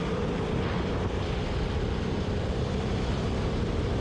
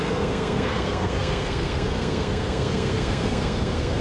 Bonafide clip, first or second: first